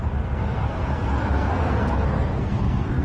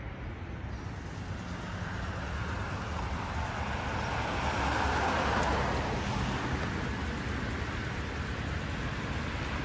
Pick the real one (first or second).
second